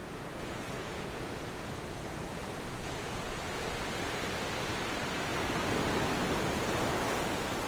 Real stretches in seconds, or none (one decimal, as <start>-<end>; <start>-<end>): 3.6-7.7